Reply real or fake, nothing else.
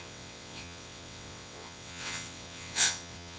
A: fake